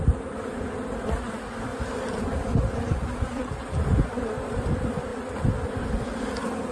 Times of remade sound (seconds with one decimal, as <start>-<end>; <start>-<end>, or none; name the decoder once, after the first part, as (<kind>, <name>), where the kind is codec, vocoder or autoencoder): 1.7-4.0 (vocoder, BigVGAN v2)

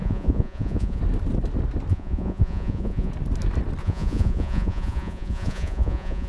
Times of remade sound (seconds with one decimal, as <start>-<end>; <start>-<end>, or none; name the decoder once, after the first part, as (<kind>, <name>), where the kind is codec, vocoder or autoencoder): 0.0-1.0 (vocoder, Vocos); 1.9-3.1; 3.8-6.3

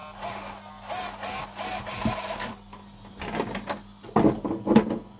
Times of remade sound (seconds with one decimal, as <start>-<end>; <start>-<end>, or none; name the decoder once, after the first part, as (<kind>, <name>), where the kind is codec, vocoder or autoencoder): none